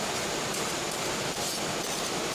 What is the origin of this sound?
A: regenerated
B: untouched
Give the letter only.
B